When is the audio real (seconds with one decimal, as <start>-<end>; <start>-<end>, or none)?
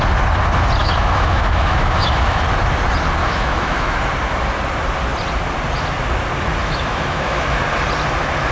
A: 0.0-0.8; 2.4-3.2; 4.0-6.6; 7.6-8.5